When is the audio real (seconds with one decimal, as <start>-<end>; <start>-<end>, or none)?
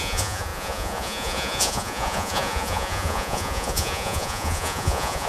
none